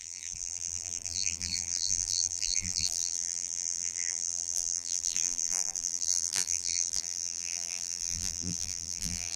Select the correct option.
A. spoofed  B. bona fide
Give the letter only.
A